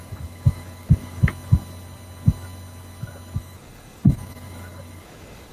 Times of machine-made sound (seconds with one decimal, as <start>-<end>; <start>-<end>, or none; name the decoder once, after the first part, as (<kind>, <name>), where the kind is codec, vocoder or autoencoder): 0.0-1.2 (codec, DAC); 3.4-5.5